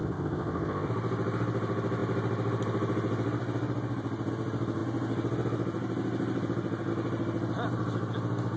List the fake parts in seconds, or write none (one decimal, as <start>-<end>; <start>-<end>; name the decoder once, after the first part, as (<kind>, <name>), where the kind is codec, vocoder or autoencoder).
0.0-0.9 (codec, ZipCodec)